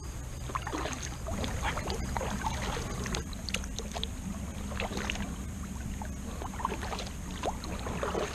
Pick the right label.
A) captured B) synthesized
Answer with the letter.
A